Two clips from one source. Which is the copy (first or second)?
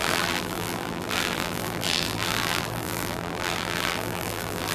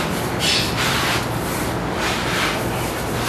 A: first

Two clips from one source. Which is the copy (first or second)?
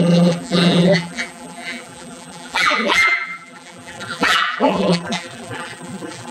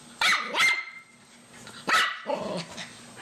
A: first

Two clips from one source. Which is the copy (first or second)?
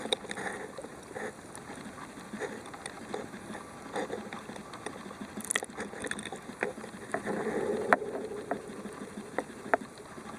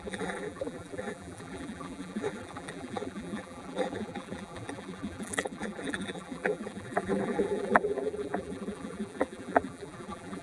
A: second